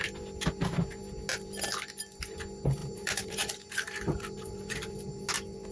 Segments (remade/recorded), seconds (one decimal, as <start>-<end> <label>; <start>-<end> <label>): 0.0-2.8 recorded; 2.8-5.3 remade; 5.3-5.7 recorded